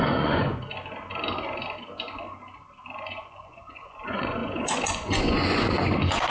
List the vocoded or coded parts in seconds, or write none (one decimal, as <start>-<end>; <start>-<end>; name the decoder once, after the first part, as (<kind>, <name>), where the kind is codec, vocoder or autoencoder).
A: 0.0-0.6 (vocoder, Vocos); 3.0-6.3